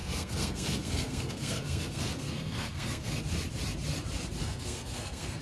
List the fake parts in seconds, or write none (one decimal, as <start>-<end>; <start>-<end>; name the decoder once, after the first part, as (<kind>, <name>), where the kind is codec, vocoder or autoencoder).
0.0-3.2 (codec, SNAC); 4.4-5.4